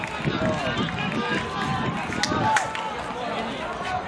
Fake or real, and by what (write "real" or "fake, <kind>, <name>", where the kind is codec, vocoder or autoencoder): real